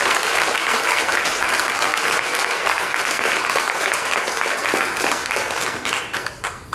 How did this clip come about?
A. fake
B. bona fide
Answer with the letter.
A